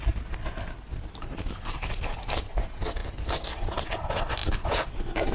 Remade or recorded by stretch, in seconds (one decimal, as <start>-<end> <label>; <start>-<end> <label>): 0.0-5.3 recorded